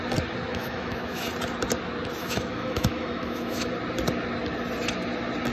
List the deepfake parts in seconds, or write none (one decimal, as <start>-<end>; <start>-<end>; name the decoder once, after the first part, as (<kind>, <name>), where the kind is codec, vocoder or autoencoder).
0.5-1.3 (autoencoder, DAC-VAE); 2.2-3.7